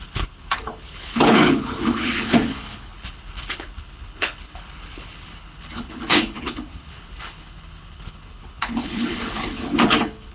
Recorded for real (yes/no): no